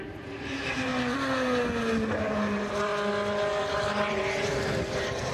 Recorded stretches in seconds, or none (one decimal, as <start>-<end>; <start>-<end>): 0.9-2.2; 2.9-3.6